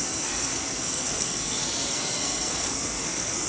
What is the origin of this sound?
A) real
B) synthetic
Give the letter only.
B